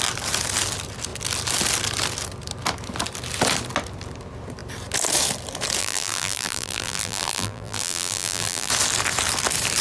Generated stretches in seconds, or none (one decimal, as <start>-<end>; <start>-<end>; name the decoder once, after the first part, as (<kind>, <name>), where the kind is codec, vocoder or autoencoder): 5.8-8.7 (vocoder, BigVGAN v2)